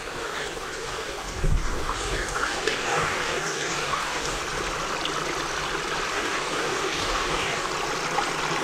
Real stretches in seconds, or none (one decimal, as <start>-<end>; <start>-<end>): 4.4-6.1; 7.7-8.6